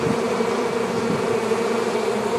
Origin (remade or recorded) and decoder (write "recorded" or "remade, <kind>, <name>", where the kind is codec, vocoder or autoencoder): remade, vocoder, BigVGAN v2